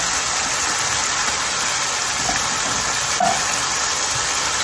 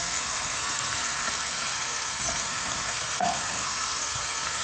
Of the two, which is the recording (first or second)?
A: first